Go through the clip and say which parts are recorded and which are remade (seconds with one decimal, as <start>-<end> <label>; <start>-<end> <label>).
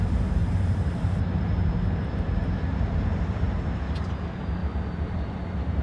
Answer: 0.0-4.6 remade; 4.6-5.1 recorded; 5.1-5.8 remade